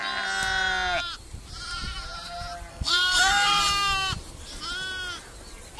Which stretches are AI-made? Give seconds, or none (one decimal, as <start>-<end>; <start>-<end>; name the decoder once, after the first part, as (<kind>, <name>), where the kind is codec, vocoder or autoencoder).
2.7-3.6 (codec, SNAC)